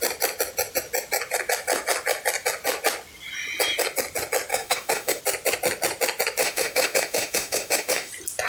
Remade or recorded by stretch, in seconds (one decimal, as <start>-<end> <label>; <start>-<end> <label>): 0.0-4.5 recorded; 4.5-5.2 remade; 5.2-6.4 recorded; 6.4-8.1 remade; 8.1-8.5 recorded